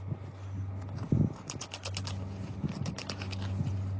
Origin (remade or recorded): recorded